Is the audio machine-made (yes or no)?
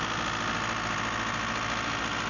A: no